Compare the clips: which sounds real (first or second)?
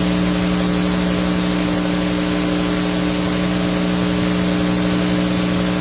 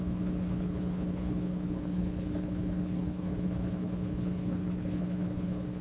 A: first